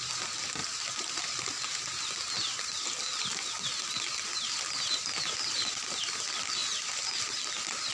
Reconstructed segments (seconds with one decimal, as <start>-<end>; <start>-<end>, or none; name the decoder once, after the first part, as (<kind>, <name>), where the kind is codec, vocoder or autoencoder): none